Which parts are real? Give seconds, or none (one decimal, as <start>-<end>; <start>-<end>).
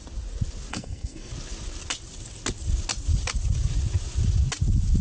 0.0-0.7; 1.3-5.0